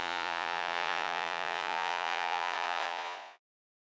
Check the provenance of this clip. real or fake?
fake